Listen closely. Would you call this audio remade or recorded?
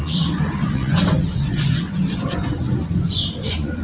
remade